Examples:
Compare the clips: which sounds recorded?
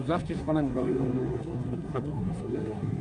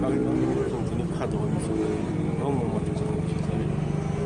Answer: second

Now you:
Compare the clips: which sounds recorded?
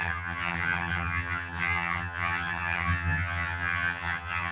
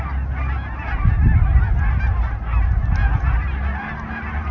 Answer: second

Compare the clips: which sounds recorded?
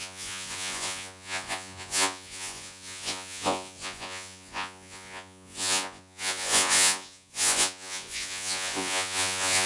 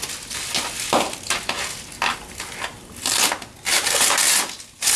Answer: second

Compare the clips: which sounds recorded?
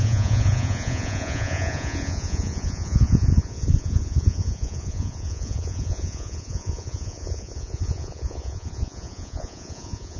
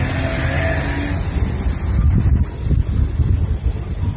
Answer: second